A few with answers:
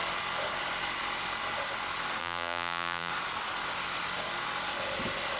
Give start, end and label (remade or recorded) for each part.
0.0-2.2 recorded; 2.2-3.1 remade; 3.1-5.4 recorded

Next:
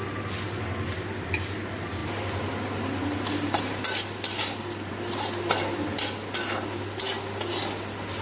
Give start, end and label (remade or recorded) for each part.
0.0-8.2 recorded

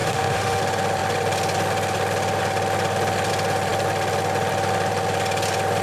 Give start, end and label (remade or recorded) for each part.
0.0-0.6 remade; 0.6-5.8 recorded